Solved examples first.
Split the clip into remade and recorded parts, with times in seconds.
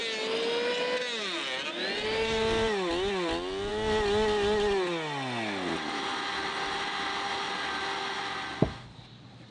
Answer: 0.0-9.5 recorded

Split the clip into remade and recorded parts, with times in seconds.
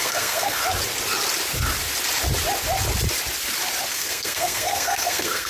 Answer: 0.0-0.6 remade; 0.6-3.9 recorded; 3.9-5.5 remade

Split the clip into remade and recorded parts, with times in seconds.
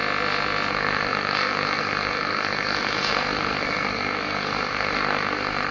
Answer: 0.0-0.7 recorded; 0.7-5.7 remade